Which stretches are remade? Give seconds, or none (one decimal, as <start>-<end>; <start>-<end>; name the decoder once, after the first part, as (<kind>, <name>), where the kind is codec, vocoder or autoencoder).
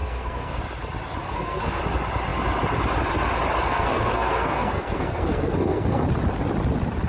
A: 0.0-0.6 (codec, SNAC); 1.2-1.8; 3.7-6.0